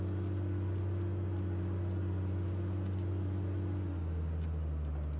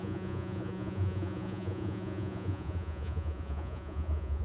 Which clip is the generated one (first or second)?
second